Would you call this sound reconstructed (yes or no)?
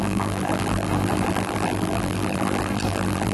yes